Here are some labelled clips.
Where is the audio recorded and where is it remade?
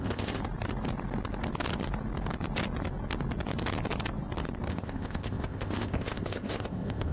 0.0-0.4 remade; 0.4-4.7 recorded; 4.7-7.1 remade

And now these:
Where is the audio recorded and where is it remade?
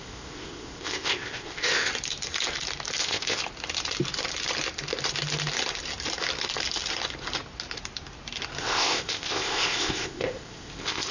0.0-1.9 remade; 1.9-3.0 recorded; 3.0-3.4 remade; 3.4-8.6 recorded; 8.6-11.1 remade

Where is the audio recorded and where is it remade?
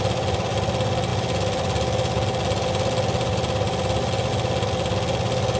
0.0-5.6 recorded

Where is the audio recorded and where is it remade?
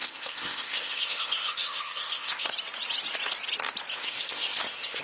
0.0-2.5 remade; 2.5-3.9 recorded; 3.9-5.0 remade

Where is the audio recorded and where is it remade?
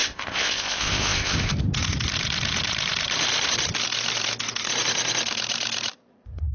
0.0-1.5 remade; 1.5-6.5 recorded